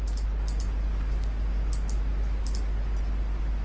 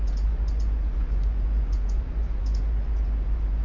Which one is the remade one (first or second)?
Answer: second